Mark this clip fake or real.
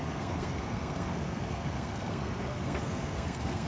fake